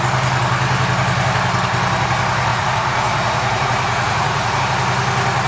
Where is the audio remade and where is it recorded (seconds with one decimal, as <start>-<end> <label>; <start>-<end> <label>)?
0.0-2.5 recorded; 2.5-4.6 remade; 4.6-5.5 recorded